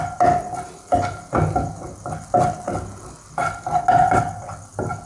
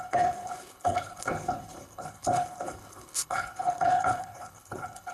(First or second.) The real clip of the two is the first